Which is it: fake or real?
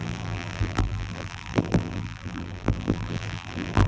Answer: fake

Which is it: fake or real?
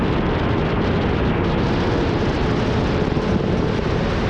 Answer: real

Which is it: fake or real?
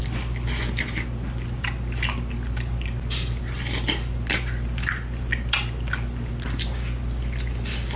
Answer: real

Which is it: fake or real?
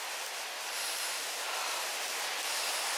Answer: real